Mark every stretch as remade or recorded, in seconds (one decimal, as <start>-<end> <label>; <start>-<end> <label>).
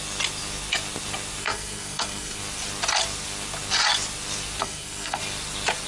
0.0-1.4 recorded; 1.4-2.4 remade; 2.4-4.6 recorded; 4.6-5.2 remade; 5.2-5.9 recorded